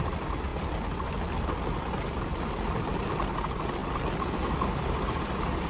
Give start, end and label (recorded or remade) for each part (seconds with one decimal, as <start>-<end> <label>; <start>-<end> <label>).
0.0-2.3 recorded; 2.3-3.1 remade; 3.1-5.7 recorded